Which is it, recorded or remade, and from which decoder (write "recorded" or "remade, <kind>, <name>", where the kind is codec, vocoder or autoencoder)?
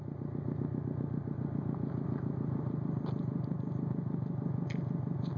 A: recorded